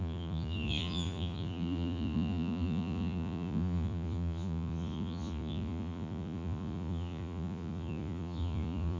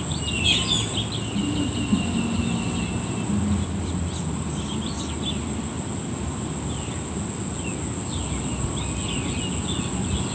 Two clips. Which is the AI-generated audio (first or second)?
first